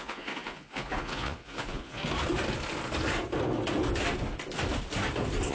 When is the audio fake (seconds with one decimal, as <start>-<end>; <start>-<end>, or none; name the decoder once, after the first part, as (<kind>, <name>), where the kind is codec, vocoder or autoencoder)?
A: 0.0-2.0 (vocoder, Vocos)